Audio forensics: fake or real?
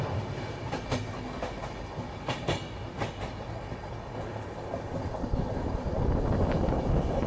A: real